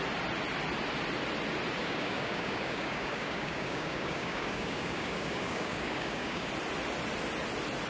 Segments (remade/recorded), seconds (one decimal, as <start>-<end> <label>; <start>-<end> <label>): 0.0-1.8 recorded; 1.8-6.5 remade; 6.5-7.9 recorded